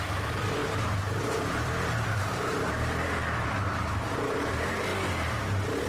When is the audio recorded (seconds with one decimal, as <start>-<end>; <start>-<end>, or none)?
0.6-1.2; 4.9-5.4